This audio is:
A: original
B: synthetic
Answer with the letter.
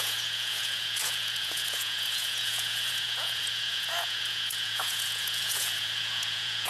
B